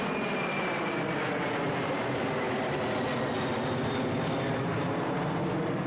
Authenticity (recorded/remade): recorded